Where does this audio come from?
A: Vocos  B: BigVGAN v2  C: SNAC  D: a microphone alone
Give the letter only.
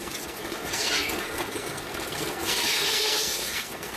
C